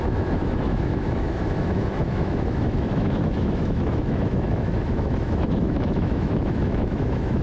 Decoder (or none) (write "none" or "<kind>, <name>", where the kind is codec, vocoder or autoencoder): autoencoder, DAC-VAE